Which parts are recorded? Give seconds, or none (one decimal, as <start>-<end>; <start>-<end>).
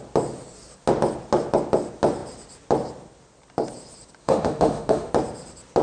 0.0-4.2; 5.1-5.8